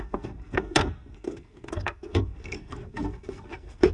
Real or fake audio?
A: fake